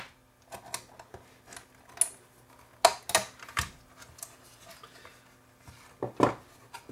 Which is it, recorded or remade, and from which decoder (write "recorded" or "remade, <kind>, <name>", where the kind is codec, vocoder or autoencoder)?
recorded